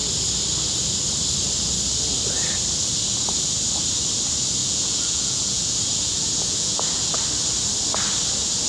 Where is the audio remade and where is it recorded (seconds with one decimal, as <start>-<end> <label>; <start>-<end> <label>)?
0.0-4.6 recorded; 4.6-7.1 remade; 7.1-8.7 recorded